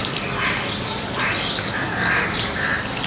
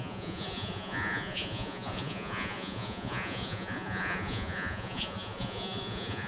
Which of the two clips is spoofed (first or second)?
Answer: second